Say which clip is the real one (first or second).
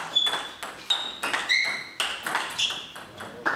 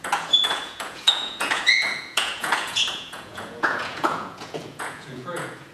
first